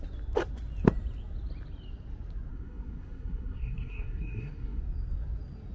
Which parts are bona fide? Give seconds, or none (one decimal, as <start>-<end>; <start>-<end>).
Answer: 0.0-2.5; 4.8-5.7